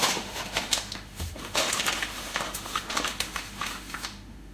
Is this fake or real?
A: fake